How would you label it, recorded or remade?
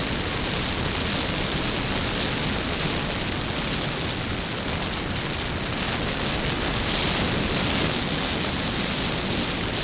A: recorded